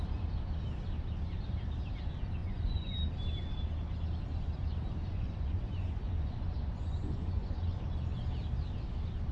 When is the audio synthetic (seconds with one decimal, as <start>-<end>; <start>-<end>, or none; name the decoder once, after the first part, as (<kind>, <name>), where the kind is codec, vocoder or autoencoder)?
2.4-2.9 (vocoder, Vocos); 5.0-7.8